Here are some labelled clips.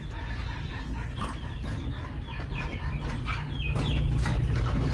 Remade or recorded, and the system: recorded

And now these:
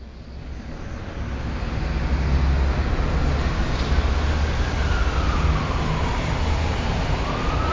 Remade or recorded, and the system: recorded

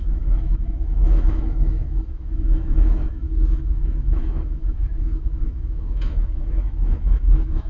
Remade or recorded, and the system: remade, autoencoder, DAC-VAE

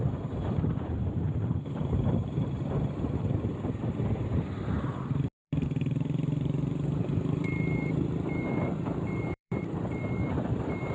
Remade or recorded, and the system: remade, vocoder, BigVGAN v2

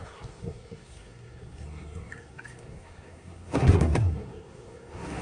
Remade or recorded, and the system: remade, codec, SNAC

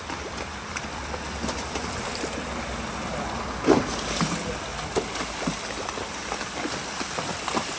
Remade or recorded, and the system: recorded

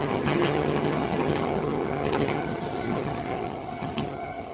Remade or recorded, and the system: remade, vocoder, HiFi-GAN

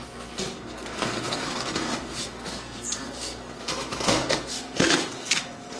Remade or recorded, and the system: remade, codec, SNAC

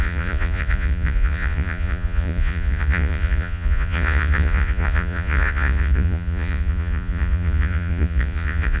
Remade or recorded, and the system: remade, vocoder, Vocos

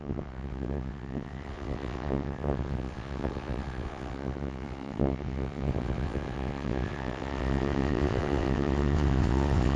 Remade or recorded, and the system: remade, vocoder, WaveNeXt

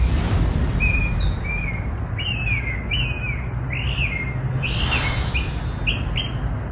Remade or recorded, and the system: recorded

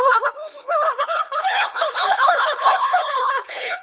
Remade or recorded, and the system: remade, codec, HILCodec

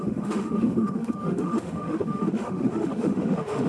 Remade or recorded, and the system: remade, autoencoder, DAC-VAE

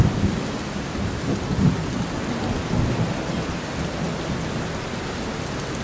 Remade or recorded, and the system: recorded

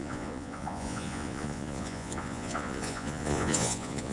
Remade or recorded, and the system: remade, vocoder, Vocos